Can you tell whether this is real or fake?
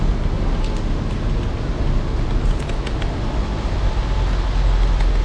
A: real